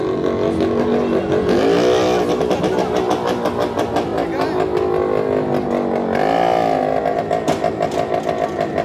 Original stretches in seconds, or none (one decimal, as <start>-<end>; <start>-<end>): 0.0-8.8